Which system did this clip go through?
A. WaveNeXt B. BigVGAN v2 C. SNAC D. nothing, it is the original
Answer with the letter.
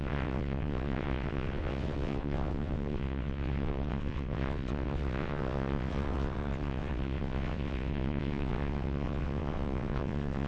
A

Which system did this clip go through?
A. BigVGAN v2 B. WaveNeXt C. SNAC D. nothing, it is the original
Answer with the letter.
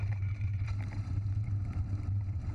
A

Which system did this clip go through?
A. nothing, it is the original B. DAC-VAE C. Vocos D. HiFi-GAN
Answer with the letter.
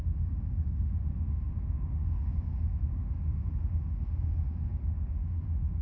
B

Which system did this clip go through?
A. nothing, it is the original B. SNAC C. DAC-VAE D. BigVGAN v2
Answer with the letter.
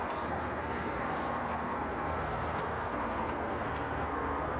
B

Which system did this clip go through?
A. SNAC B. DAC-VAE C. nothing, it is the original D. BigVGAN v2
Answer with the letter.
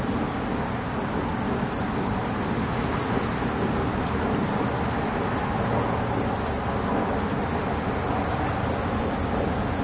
C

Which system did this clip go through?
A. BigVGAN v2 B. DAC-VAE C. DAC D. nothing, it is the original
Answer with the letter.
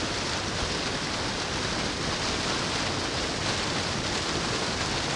D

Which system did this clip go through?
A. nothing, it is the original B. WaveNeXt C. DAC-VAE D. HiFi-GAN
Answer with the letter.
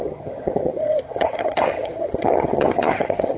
D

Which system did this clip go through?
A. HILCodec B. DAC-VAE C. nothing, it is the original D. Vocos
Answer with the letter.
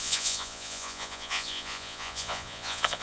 D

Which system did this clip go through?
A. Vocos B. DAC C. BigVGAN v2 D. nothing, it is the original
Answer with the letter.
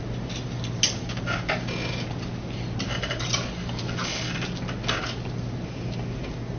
D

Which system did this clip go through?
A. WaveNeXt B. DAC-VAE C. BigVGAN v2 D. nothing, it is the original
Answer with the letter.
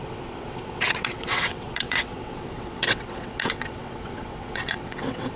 A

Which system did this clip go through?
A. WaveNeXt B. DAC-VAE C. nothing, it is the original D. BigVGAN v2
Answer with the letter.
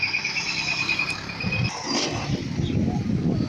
C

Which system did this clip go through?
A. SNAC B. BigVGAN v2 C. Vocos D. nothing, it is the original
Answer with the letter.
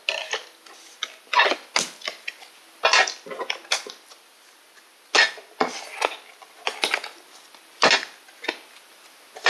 D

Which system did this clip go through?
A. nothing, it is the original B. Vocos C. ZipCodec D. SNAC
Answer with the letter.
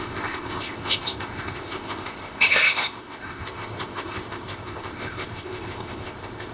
C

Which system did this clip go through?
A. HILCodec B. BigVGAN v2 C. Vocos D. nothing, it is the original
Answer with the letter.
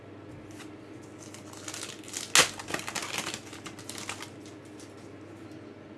D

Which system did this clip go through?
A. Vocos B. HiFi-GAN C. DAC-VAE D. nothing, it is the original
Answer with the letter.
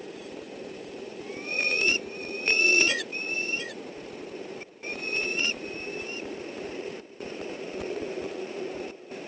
A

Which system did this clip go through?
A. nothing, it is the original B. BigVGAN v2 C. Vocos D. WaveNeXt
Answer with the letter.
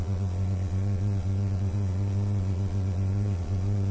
C